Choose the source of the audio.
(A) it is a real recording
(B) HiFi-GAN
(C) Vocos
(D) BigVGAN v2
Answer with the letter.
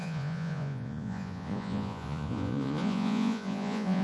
C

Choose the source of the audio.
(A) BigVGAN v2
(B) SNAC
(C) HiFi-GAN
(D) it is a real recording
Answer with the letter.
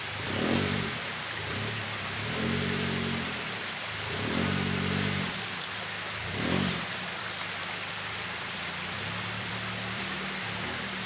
A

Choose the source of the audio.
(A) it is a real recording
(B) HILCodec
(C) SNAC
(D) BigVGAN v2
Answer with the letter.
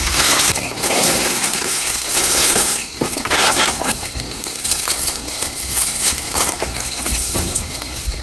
C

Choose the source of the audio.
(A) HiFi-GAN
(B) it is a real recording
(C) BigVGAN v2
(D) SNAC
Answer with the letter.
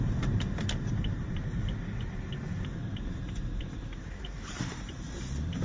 C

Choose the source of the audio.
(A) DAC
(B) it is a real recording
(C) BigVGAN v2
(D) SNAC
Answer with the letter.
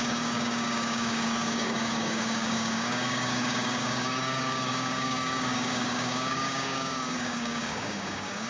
A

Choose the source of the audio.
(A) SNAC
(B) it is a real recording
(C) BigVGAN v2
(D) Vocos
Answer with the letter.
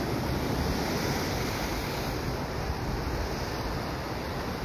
B